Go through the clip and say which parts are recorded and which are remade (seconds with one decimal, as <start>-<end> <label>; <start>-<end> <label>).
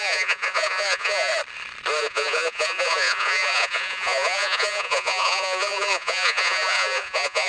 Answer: 0.0-1.3 remade; 1.3-2.0 recorded; 2.0-7.5 remade